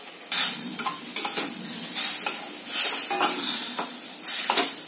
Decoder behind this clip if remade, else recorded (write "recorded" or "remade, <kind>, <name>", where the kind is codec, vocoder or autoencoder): recorded